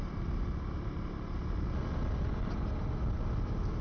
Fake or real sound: real